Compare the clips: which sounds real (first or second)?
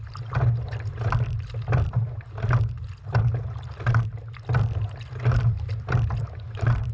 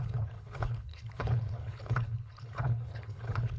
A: first